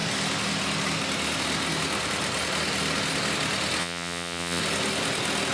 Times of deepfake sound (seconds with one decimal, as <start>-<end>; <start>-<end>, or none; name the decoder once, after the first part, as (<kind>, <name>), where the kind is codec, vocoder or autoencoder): 3.8-4.6 (vocoder, Vocos)